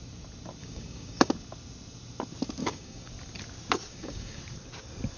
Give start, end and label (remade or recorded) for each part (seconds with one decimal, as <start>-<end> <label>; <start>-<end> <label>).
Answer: 0.0-0.6 recorded; 0.6-1.3 remade; 1.3-2.6 recorded; 2.6-3.1 remade; 3.1-3.9 recorded; 3.9-4.4 remade; 4.4-5.2 recorded